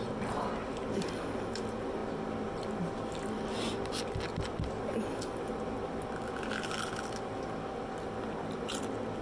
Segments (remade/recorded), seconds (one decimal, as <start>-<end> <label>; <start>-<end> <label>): 0.0-9.2 recorded